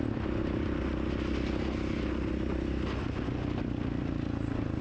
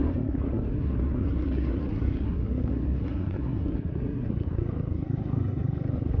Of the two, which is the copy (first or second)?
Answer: second